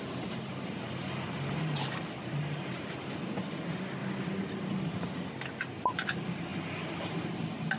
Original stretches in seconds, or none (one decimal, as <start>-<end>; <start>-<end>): 0.0-7.8